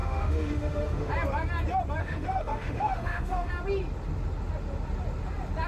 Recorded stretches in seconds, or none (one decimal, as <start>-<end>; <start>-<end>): 1.1-2.0; 3.5-5.7